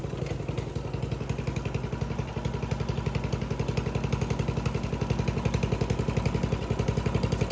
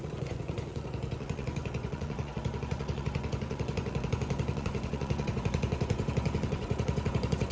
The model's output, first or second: second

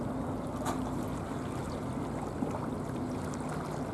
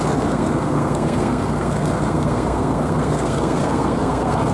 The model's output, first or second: second